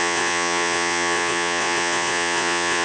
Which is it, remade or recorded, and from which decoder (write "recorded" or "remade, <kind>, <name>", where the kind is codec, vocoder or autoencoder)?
remade, vocoder, Vocos